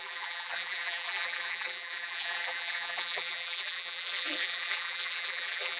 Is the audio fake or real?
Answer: fake